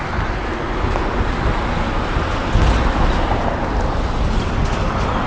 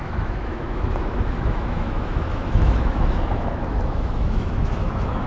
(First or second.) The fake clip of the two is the second